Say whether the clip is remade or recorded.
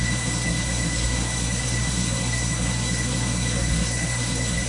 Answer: remade